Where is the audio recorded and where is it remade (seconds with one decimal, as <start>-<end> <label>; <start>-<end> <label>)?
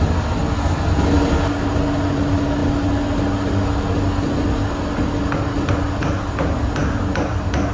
0.0-7.7 recorded